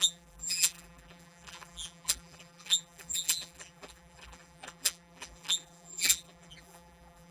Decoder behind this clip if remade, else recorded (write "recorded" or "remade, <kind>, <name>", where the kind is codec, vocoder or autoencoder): remade, vocoder, BigVGAN v2